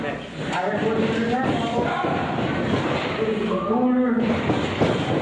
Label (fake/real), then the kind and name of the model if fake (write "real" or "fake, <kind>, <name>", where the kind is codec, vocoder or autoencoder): real